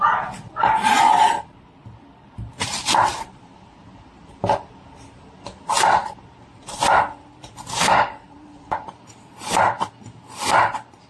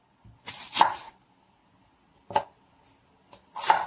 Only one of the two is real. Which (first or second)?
second